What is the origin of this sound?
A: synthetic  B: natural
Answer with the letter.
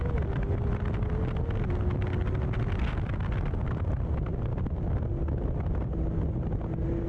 B